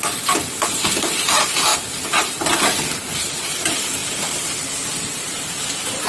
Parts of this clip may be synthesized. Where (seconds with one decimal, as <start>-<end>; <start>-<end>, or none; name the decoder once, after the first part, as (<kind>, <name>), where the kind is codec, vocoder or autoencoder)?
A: 0.0-4.0 (vocoder, BigVGAN v2); 5.0-6.1

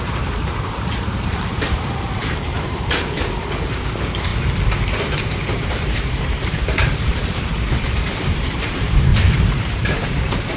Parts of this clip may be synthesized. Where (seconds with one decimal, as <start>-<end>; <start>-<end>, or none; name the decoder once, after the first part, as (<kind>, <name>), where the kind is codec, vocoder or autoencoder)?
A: 0.0-4.3 (vocoder, BigVGAN v2); 5.1-10.6